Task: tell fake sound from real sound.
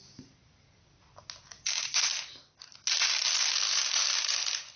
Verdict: real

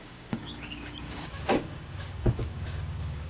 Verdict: fake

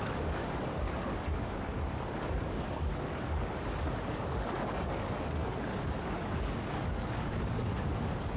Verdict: fake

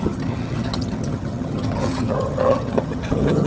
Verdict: fake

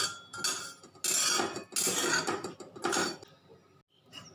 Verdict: real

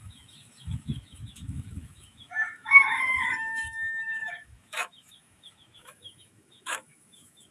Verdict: fake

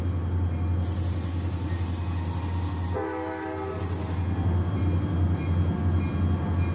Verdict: real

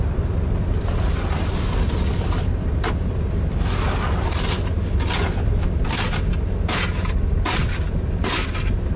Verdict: real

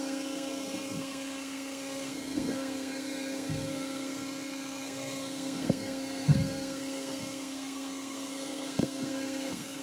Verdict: fake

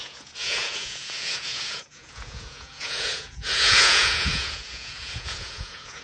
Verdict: fake